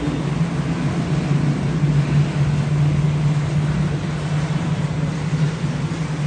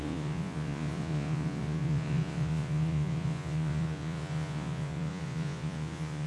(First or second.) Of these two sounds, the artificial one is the second